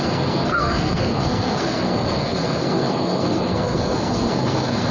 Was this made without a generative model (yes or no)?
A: no